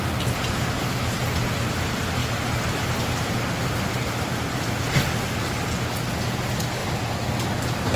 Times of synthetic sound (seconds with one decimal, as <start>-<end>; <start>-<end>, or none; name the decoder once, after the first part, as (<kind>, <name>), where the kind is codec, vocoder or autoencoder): none